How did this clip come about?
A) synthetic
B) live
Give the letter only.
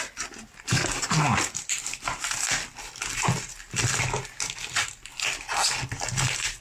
B